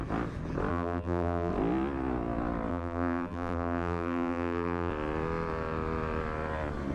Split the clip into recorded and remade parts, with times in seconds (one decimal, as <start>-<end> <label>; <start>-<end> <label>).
0.0-0.7 recorded; 0.7-1.5 remade; 1.5-2.7 recorded; 2.7-4.9 remade; 4.9-6.9 recorded